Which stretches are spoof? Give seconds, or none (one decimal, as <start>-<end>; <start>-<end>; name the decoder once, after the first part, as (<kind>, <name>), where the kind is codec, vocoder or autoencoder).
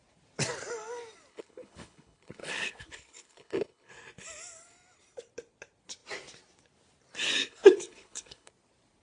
1.3-3.9 (codec, HILCodec); 7.4-8.5